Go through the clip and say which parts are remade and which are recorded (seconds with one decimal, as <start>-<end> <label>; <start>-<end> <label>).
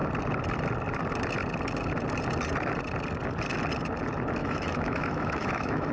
0.0-4.4 recorded; 4.4-5.9 remade